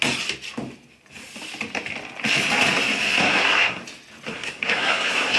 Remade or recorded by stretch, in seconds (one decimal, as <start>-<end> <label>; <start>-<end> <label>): 0.0-3.2 recorded; 3.2-3.8 remade; 3.8-4.3 recorded; 4.3-5.4 remade